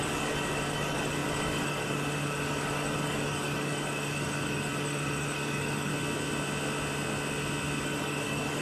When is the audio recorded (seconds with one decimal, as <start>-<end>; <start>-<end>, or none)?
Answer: 5.9-7.8